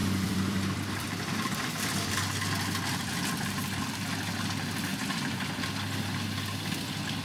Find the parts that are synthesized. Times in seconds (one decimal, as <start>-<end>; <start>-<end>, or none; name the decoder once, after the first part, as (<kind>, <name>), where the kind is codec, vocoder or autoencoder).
0.0-2.1 (vocoder, BigVGAN v2)